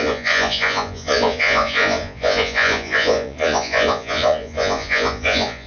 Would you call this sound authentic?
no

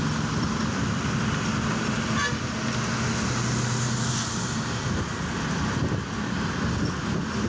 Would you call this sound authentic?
yes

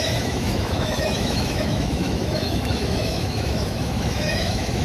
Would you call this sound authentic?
no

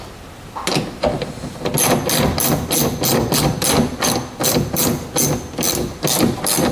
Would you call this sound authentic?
yes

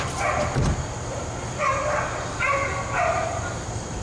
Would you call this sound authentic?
yes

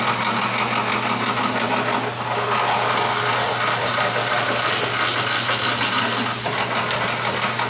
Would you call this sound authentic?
yes